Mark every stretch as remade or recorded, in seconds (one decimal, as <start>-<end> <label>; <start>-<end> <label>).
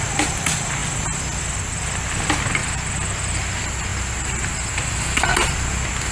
0.0-6.1 recorded